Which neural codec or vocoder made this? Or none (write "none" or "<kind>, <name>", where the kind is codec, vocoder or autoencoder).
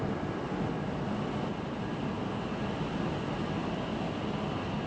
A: none